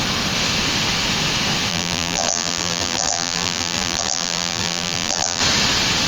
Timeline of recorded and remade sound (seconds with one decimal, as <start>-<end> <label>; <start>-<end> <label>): 0.0-1.7 recorded; 1.7-5.4 remade; 5.4-6.1 recorded